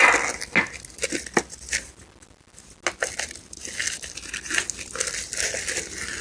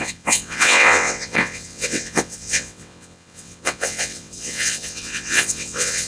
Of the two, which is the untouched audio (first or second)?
first